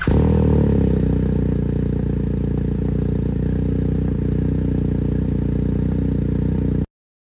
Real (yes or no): yes